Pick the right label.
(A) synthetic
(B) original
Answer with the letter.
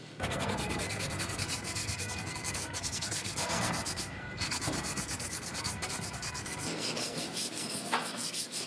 A